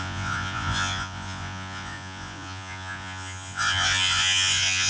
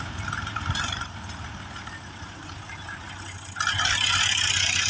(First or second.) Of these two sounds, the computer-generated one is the first